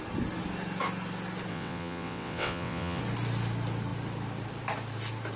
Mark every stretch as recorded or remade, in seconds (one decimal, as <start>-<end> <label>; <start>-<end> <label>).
0.0-1.5 recorded; 1.5-3.0 remade; 3.0-5.4 recorded